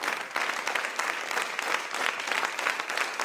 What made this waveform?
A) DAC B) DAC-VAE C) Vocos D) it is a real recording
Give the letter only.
D